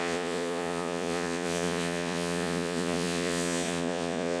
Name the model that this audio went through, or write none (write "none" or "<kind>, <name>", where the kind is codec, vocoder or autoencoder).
vocoder, Vocos